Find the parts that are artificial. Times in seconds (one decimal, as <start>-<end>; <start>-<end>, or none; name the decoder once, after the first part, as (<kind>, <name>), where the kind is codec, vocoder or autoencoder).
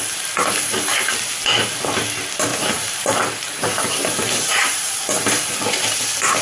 2.5-5.4 (vocoder, BigVGAN v2)